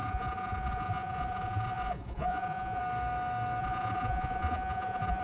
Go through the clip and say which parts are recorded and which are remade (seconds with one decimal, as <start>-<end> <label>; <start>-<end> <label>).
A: 0.0-2.8 remade; 2.8-3.6 recorded; 3.6-5.2 remade